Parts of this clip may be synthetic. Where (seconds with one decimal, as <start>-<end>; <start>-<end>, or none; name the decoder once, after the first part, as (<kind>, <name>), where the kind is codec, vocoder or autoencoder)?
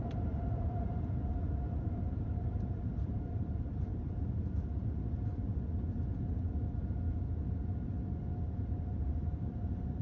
0.0-4.4 (vocoder, BigVGAN v2); 8.9-10.0